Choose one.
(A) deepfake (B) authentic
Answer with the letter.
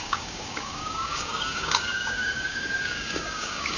A